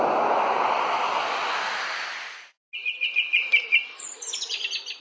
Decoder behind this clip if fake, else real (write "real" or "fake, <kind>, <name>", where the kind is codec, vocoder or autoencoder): real